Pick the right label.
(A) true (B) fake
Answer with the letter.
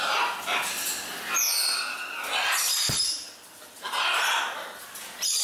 A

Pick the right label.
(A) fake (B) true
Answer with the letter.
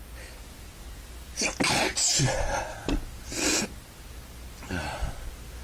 B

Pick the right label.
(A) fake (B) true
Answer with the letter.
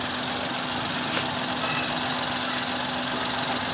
B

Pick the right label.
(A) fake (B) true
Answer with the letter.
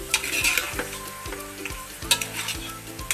B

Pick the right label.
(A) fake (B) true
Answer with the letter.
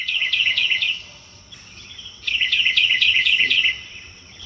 A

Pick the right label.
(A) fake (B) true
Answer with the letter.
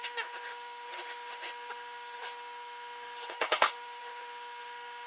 A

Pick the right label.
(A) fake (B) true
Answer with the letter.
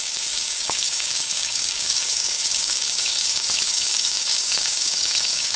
A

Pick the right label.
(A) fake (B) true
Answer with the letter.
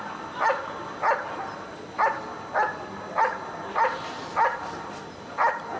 B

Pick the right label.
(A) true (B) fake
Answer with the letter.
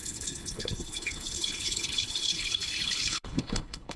B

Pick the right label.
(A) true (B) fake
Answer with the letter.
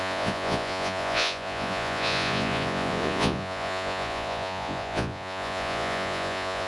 B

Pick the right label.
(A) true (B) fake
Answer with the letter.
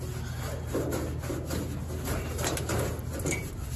A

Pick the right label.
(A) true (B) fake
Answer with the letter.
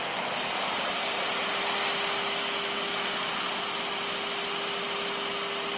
A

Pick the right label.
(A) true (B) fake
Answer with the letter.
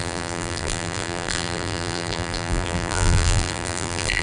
B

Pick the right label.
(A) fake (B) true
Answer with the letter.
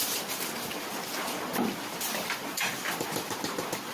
A